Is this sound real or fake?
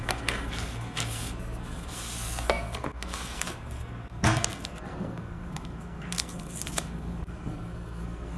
fake